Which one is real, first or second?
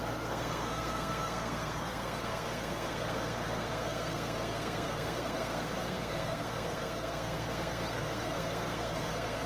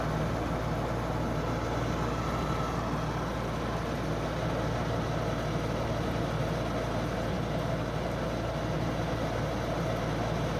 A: second